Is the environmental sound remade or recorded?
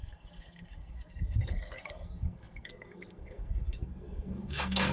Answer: remade